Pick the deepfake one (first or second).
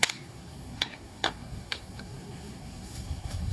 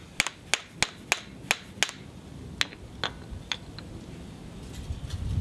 first